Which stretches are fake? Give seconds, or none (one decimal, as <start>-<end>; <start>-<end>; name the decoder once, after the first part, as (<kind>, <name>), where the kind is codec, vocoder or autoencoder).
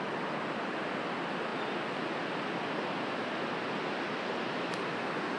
none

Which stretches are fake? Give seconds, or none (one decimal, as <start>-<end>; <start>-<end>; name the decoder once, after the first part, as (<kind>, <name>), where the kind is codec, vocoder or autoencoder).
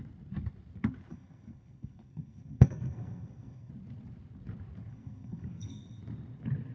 1.1-3.7 (codec, SNAC); 4.9-6.0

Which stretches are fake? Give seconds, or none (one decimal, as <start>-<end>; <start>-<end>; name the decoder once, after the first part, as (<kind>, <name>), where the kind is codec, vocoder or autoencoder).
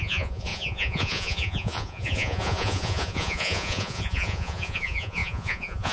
0.0-5.9 (vocoder, Vocos)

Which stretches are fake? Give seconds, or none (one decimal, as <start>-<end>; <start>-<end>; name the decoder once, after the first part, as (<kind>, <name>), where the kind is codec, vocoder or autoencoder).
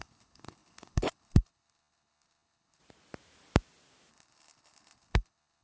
0.0-2.8 (codec, HILCodec); 4.1-5.6